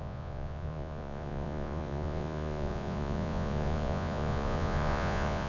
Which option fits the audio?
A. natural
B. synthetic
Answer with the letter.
B